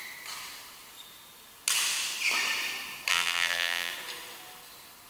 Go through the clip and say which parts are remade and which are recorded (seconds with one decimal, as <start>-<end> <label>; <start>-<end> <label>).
0.0-3.1 recorded; 3.1-3.9 remade; 3.9-5.1 recorded